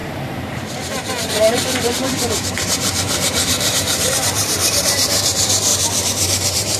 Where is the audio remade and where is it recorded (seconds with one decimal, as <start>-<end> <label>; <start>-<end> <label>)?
0.0-6.8 remade